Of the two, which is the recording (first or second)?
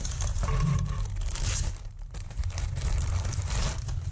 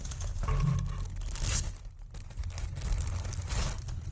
second